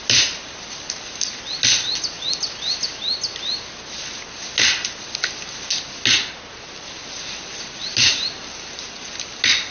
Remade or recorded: recorded